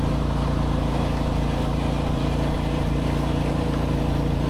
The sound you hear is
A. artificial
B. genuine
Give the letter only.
A